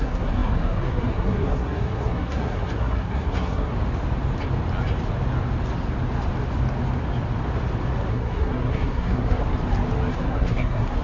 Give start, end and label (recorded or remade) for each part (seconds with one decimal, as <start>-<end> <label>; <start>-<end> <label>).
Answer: 0.0-3.7 remade; 3.7-8.1 recorded; 8.1-9.4 remade; 9.4-10.1 recorded; 10.1-11.0 remade